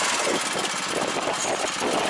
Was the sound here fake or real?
real